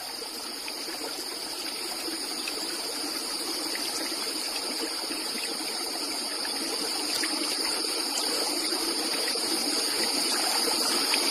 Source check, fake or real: real